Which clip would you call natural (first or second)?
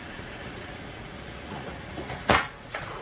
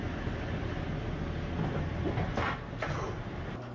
second